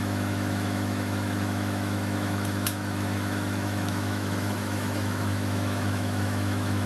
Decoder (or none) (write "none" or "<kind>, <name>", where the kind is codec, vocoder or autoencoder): autoencoder, DAC-VAE